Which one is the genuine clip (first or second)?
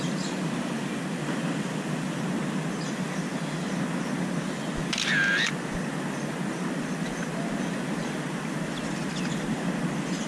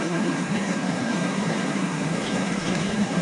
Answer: first